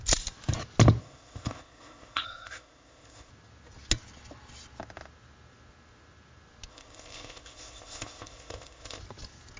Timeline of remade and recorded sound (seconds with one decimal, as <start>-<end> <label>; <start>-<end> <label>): 0.0-1.0 recorded; 1.0-3.3 remade; 3.3-6.7 recorded; 6.7-9.0 remade; 9.0-9.6 recorded